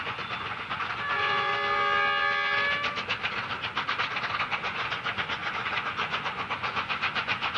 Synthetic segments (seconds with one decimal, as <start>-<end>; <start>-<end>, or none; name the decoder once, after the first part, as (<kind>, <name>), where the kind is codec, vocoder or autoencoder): 0.0-1.5 (vocoder, Vocos); 4.4-7.6